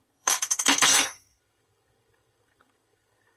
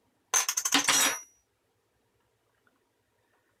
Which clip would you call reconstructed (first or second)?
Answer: first